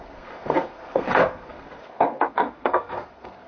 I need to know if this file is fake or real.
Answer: fake